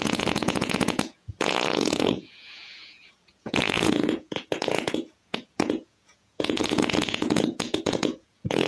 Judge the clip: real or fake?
fake